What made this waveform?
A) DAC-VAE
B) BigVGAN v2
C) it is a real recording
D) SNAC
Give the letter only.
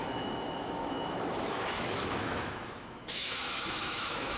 A